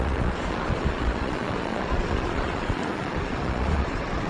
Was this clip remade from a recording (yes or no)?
yes